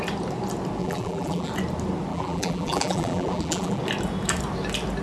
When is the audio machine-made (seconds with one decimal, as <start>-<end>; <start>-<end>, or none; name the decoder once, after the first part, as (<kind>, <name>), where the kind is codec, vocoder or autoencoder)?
0.8-1.5 (vocoder, BigVGAN v2); 2.1-3.8